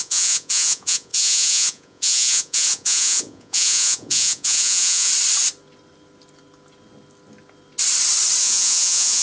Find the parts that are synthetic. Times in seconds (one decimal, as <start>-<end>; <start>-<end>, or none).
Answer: 0.0-5.1; 8.4-9.2

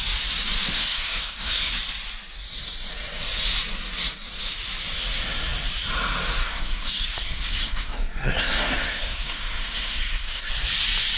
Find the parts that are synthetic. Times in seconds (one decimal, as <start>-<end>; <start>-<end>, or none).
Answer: 0.7-1.7; 6.4-10.5

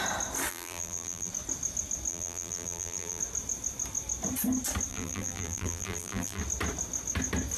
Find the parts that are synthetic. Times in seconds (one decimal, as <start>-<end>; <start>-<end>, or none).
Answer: 0.5-1.3; 2.1-3.2; 4.9-6.4

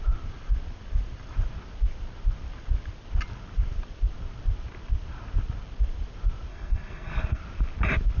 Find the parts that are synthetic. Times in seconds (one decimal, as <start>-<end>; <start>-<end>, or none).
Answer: 6.5-7.4

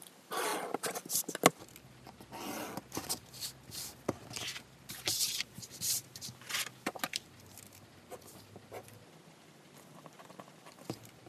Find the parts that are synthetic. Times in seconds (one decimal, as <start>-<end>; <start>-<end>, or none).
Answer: none